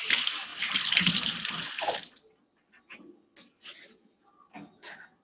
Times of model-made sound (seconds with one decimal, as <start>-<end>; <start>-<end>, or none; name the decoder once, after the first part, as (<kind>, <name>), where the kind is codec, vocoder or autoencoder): none